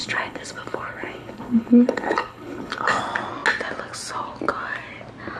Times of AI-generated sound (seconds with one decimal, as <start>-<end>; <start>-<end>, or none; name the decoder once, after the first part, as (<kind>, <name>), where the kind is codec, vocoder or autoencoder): 0.0-3.0 (codec, HILCodec)